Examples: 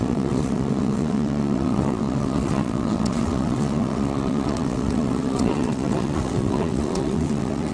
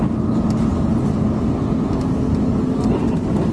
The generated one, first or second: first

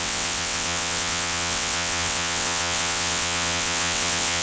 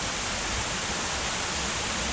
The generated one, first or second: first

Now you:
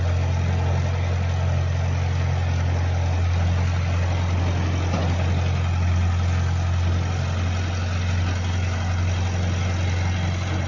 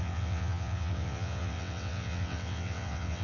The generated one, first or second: second